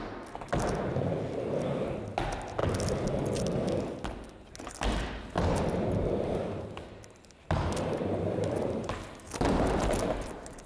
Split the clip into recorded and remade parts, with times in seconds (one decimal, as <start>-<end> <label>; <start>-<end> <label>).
0.0-10.7 recorded